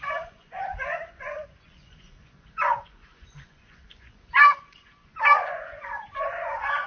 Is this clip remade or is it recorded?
remade